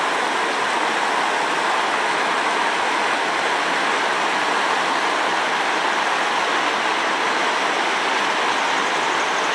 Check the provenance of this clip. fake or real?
real